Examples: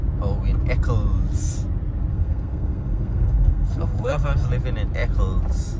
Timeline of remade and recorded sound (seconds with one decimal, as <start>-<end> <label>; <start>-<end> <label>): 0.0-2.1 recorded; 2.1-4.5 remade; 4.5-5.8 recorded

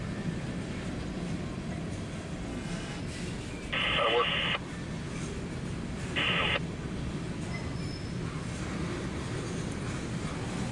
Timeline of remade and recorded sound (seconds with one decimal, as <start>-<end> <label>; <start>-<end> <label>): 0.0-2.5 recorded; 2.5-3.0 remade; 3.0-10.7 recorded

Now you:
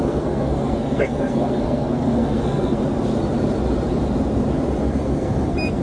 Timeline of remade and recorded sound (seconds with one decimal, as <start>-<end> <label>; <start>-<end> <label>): 0.0-2.8 remade; 2.8-4.8 recorded; 4.8-5.8 remade